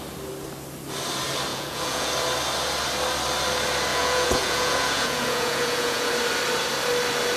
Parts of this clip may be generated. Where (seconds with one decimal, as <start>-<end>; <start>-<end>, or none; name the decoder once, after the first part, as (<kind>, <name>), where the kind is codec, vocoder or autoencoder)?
1.5-2.1 (vocoder, Vocos); 3.9-6.1